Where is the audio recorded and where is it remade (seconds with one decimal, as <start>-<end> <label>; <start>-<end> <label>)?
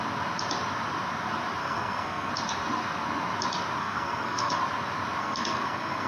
0.0-1.6 recorded; 1.6-2.3 remade; 2.3-3.8 recorded; 3.8-4.6 remade; 4.6-5.2 recorded; 5.2-6.1 remade